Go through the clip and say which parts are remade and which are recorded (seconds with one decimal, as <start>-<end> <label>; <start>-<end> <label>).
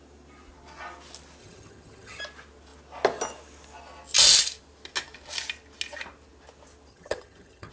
0.0-1.4 recorded; 1.4-2.2 remade; 2.2-6.9 recorded; 6.9-7.7 remade